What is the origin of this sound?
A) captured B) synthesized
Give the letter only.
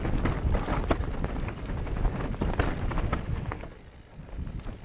A